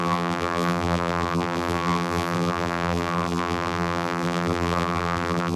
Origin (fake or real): fake